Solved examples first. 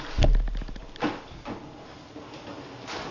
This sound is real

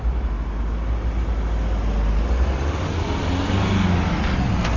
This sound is real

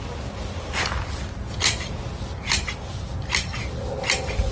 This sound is real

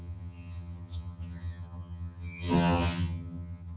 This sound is fake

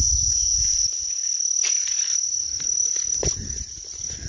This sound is real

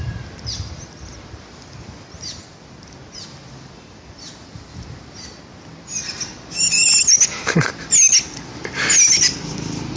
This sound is real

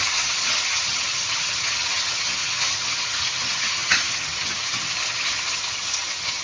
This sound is fake